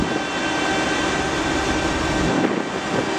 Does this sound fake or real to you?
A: real